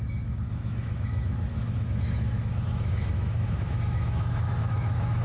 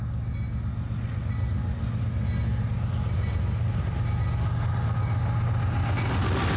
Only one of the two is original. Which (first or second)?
second